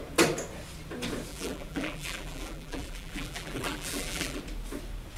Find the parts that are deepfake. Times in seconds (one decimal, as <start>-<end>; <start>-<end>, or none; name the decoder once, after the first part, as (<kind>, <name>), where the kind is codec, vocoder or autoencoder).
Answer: 1.3-4.4 (vocoder, BigVGAN v2)